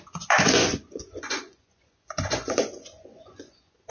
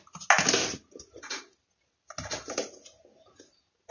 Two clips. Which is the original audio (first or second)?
second